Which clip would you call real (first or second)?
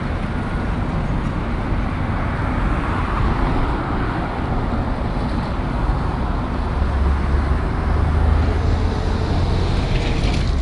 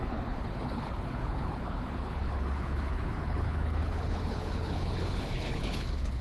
first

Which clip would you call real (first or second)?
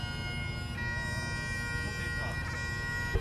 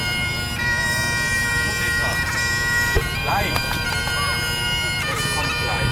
first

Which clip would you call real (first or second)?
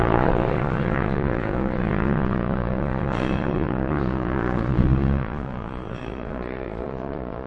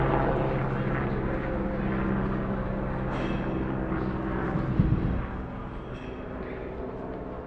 second